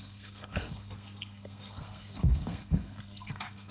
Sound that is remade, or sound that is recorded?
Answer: remade